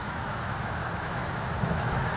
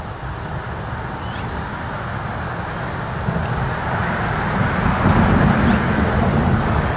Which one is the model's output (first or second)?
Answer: first